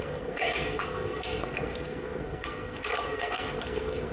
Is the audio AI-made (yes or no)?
yes